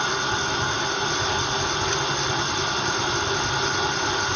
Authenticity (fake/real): real